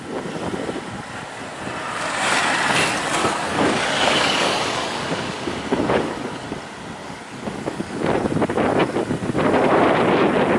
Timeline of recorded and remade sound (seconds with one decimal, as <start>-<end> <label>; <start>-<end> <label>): 0.0-3.2 recorded; 3.2-6.6 remade; 6.6-7.0 recorded; 7.0-8.0 remade; 8.0-10.6 recorded